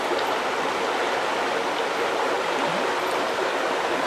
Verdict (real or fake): real